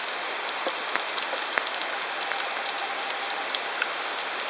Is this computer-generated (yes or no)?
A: no